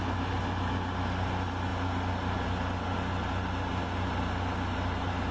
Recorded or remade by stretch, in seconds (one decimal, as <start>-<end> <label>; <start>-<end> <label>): 0.0-5.3 recorded